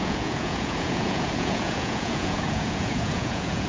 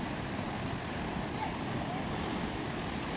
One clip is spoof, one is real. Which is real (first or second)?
second